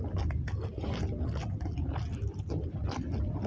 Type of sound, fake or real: real